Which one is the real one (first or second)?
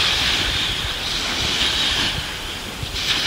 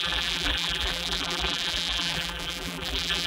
first